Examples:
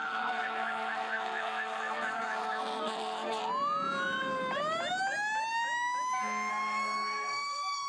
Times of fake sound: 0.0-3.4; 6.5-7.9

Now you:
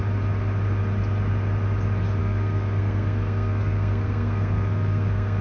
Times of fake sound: 2.2-5.4

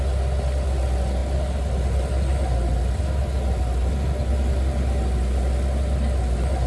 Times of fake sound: none

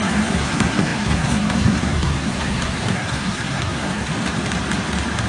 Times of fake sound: 0.0-4.1

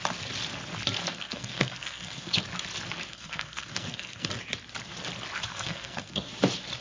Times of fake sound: 1.0-2.4; 3.1-4.3; 5.5-6.3

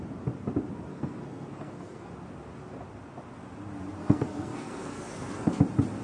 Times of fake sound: 0.9-2.1; 4.0-5.6